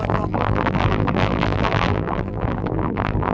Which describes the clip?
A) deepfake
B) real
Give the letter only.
A